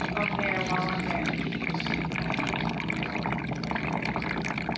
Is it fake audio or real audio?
real